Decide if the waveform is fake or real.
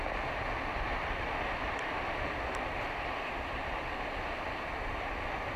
real